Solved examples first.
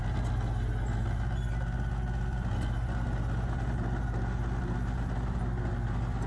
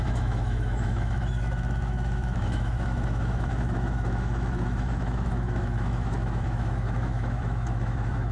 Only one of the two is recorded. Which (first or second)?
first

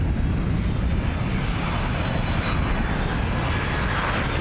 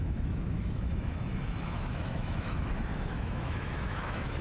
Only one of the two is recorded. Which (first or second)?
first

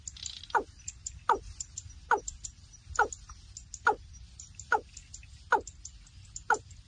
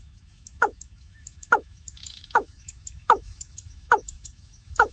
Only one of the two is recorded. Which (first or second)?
first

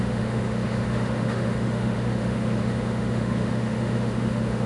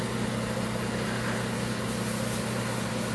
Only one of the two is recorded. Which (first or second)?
second